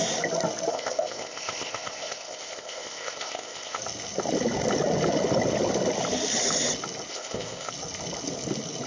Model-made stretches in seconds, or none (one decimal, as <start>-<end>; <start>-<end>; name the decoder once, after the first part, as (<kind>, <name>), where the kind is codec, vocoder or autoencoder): 0.7-3.8 (codec, ZipCodec); 7.1-7.7